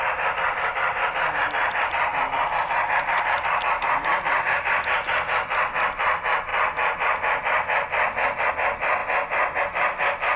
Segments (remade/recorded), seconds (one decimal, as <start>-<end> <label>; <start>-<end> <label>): 0.0-10.4 recorded